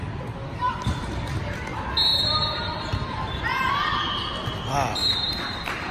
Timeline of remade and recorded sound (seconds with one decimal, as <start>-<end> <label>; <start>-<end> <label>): 0.0-2.1 recorded; 2.1-3.7 remade; 3.7-5.0 recorded; 5.0-5.9 remade